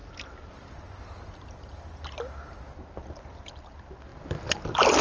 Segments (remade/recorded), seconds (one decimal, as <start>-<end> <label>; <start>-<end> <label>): 0.0-5.0 recorded